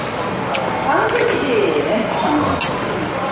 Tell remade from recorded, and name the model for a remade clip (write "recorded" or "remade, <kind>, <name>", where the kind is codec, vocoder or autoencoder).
recorded